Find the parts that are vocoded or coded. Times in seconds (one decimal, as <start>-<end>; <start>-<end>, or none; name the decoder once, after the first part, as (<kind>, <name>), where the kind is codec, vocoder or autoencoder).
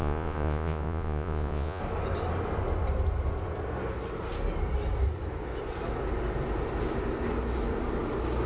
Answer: 0.0-1.8 (vocoder, Vocos)